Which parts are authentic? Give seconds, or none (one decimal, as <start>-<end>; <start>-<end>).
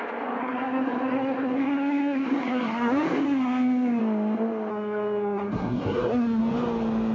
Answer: 0.0-0.4; 4.0-4.7; 6.4-7.1